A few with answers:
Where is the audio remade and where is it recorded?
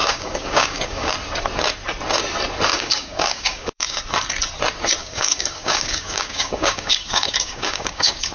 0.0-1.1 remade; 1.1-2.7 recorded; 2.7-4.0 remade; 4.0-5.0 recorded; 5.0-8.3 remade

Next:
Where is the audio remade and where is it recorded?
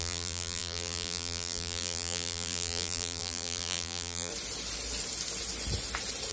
0.0-4.3 remade; 4.3-6.3 recorded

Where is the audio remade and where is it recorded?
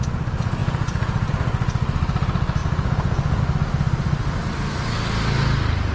0.0-0.6 recorded; 0.6-1.3 remade; 1.3-2.6 recorded; 2.6-3.4 remade; 3.4-5.9 recorded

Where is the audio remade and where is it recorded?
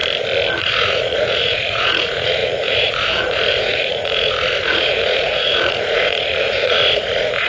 0.0-0.6 recorded; 0.6-7.5 remade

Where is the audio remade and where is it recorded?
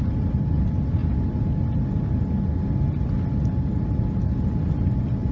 0.0-5.3 recorded